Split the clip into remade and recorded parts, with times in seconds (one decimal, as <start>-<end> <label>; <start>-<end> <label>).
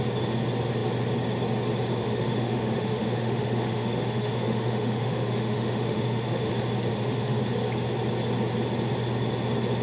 0.0-2.0 recorded; 2.0-6.5 remade; 6.5-6.9 recorded; 6.9-7.4 remade; 7.4-9.8 recorded